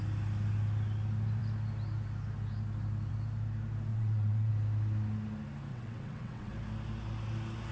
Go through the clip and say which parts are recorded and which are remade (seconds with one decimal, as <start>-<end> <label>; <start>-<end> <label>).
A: 0.0-3.9 recorded; 3.9-4.5 remade; 4.5-5.7 recorded; 5.7-6.5 remade; 6.5-7.7 recorded